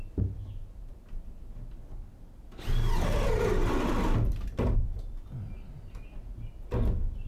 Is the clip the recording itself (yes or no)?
yes